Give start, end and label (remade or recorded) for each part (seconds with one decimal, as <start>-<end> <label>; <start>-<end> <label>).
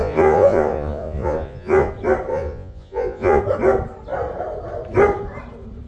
0.0-1.9 remade; 1.9-2.3 recorded; 2.3-3.4 remade; 3.4-5.9 recorded